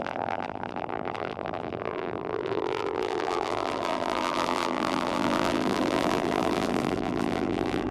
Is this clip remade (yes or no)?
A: yes